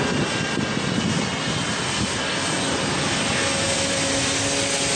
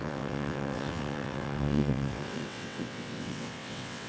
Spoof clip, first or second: second